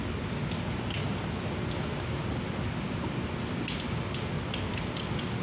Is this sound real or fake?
real